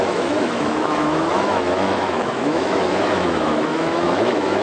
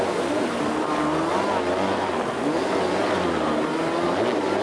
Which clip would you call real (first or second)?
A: second